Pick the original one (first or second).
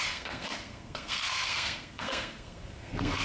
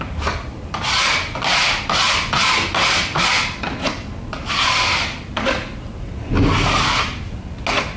second